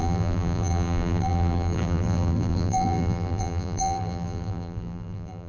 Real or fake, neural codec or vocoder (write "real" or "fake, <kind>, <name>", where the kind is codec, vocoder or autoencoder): fake, vocoder, BigVGAN v2